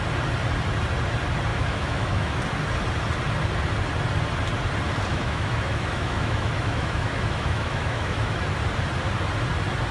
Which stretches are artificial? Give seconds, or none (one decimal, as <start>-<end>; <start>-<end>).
1.5-2.4; 5.1-8.4